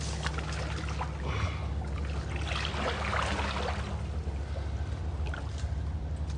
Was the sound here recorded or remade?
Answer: recorded